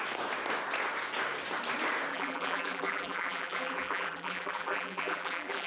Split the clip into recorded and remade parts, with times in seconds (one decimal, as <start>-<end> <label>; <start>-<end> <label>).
0.0-2.1 recorded; 2.1-5.7 remade